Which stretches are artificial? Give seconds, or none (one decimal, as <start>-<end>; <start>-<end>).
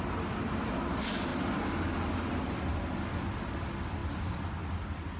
none